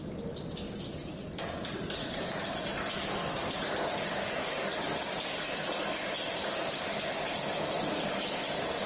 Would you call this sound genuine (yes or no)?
yes